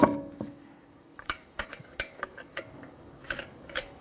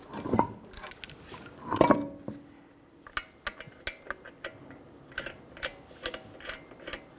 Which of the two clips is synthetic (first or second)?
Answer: first